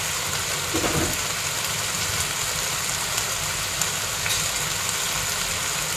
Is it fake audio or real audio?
real